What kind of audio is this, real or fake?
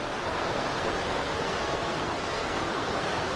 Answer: fake